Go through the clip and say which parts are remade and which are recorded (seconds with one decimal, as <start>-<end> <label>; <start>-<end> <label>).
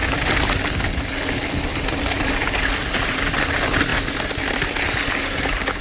0.0-5.8 recorded